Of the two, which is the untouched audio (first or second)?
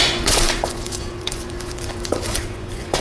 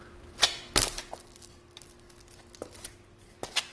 second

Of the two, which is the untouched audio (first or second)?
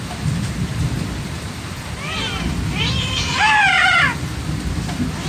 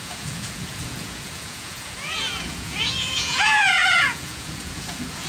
first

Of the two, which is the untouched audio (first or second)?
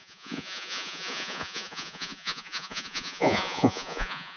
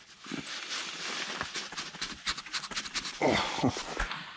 second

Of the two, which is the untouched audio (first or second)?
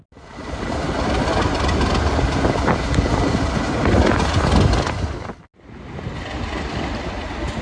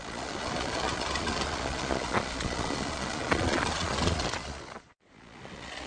first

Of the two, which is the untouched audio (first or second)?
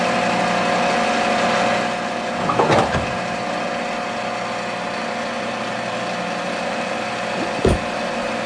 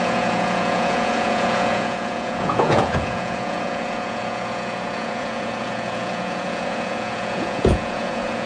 first